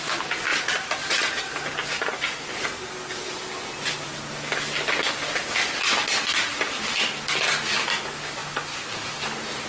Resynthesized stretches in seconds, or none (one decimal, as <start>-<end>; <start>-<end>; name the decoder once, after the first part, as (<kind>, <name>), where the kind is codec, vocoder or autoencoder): none